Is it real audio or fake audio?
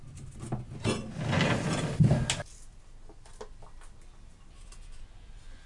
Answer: real